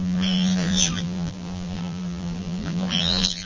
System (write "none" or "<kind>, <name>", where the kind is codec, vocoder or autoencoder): vocoder, BigVGAN v2